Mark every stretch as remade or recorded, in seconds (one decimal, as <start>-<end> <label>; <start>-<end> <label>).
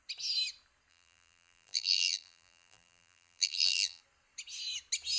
0.0-0.9 recorded; 0.9-4.0 remade; 4.0-5.2 recorded